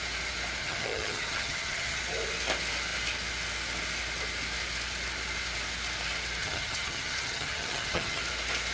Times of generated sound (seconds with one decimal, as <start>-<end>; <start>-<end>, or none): 0.6-2.0; 6.4-8.2